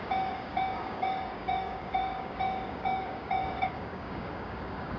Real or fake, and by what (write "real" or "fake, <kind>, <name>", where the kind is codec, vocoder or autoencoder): fake, codec, DAC